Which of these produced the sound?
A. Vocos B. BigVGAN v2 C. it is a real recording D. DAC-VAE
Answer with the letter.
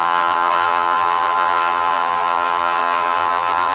B